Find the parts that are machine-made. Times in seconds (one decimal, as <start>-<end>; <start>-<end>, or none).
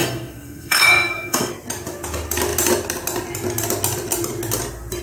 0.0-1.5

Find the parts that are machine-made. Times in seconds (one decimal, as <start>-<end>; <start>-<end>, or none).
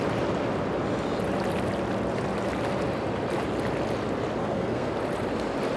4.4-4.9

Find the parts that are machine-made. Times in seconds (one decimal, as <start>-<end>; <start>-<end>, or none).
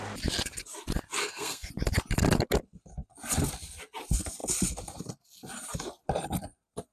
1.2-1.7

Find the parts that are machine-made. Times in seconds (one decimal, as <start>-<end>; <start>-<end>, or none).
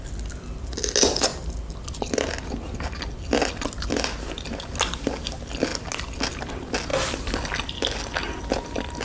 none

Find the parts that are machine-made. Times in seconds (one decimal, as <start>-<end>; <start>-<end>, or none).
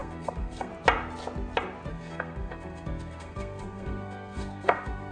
0.0-0.7; 1.9-5.1